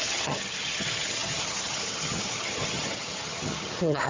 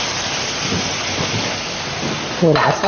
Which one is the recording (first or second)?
second